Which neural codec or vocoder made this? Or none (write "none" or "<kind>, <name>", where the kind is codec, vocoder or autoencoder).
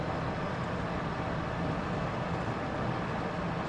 none